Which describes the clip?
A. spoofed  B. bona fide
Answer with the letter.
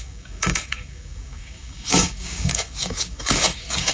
A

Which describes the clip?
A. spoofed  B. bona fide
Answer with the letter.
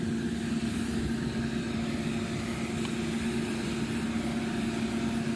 B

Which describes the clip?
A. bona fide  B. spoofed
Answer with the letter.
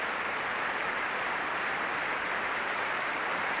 B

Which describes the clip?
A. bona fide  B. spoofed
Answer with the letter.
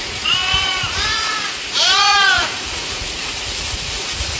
B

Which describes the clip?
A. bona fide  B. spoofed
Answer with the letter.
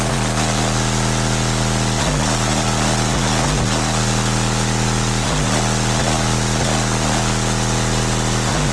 A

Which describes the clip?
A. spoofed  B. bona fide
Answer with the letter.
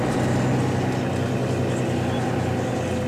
B